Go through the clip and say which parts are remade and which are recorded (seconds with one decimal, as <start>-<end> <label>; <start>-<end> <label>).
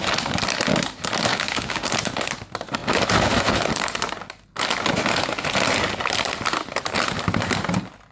0.0-1.3 recorded; 1.3-1.9 remade; 1.9-8.1 recorded